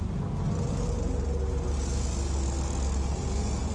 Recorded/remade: recorded